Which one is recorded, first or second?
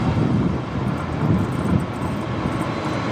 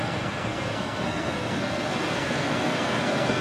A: first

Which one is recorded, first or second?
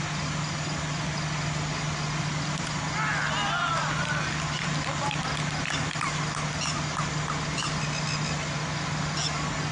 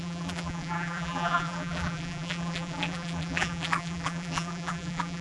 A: first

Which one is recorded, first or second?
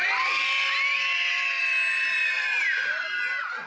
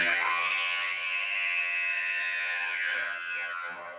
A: first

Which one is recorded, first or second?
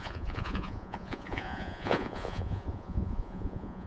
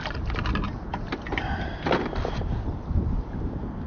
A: second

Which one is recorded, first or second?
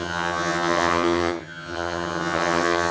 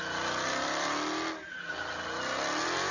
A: second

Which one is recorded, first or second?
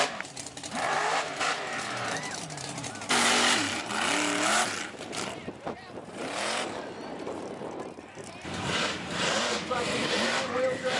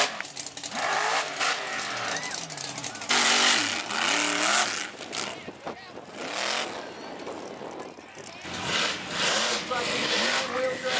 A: second